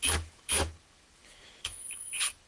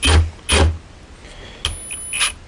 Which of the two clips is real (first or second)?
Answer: second